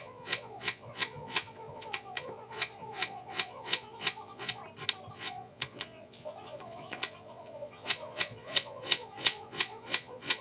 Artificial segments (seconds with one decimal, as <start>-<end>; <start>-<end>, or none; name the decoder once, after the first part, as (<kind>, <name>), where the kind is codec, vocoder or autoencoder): 0.0-4.6 (vocoder, Vocos); 5.1-10.4

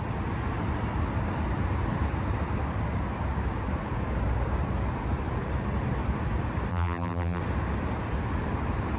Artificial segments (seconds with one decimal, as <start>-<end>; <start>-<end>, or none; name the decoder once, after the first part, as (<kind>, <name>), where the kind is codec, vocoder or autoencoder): 6.7-7.4 (vocoder, BigVGAN v2)

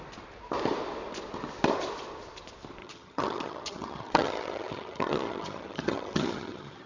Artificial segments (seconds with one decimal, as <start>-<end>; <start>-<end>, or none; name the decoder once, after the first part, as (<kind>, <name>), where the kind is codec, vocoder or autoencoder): 2.8-6.9 (vocoder, HiFi-GAN)

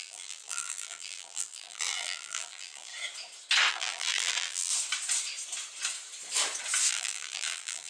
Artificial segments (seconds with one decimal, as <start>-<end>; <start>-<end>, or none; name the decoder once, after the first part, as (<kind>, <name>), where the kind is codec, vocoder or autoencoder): 0.0-2.9 (vocoder, BigVGAN v2); 3.7-4.7; 6.9-7.9

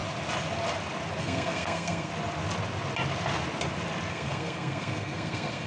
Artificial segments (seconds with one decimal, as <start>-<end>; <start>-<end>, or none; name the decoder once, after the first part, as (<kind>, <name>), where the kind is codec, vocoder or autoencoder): 1.2-2.1 (codec, SNAC); 4.1-5.7

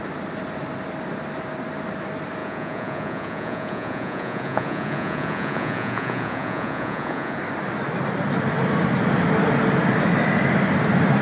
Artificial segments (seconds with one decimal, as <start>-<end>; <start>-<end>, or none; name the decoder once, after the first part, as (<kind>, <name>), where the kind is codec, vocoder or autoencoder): 2.4-7.4 (vocoder, Vocos)

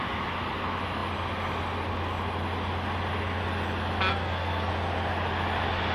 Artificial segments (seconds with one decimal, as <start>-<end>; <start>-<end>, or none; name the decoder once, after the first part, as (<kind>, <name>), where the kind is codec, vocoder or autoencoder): 4.1-4.7 (codec, SNAC)